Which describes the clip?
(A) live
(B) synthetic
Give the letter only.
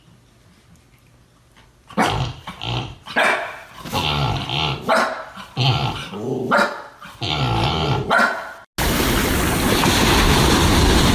A